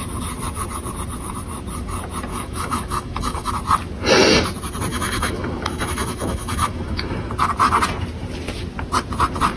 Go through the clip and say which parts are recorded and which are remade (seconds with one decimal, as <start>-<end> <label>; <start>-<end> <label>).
0.0-2.3 recorded; 2.3-3.5 remade; 3.5-4.9 recorded; 4.9-7.3 remade; 7.3-9.6 recorded